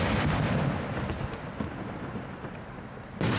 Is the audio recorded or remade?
recorded